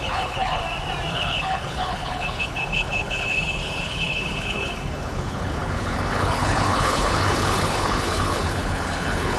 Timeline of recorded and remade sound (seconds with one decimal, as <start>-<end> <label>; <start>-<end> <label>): 0.0-0.6 remade; 0.6-1.1 recorded; 1.1-9.4 remade